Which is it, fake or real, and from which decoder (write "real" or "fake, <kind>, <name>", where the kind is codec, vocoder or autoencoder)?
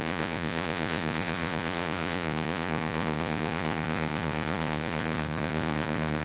fake, vocoder, Vocos